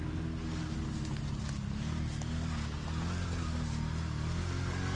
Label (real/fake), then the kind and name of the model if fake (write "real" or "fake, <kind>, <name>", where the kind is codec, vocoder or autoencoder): real